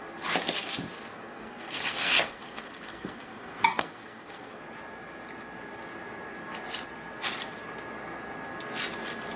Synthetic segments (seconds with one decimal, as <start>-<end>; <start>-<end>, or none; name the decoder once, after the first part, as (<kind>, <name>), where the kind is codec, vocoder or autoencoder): 1.1-4.6 (codec, SNAC)